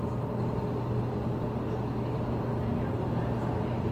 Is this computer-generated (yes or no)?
no